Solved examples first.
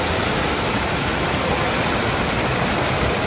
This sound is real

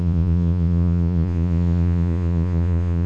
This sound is fake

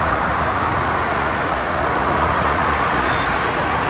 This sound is fake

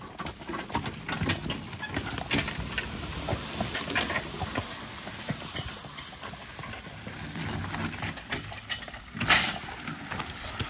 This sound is real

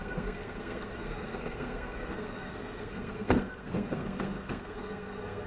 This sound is fake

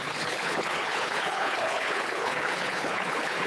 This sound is fake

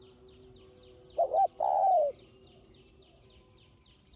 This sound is real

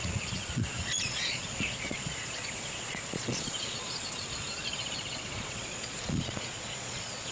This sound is fake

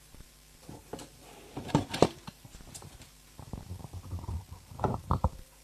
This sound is fake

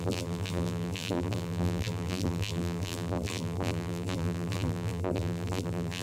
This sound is fake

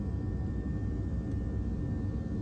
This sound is real